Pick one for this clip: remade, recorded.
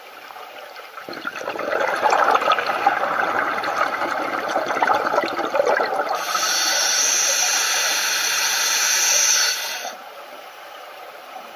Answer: remade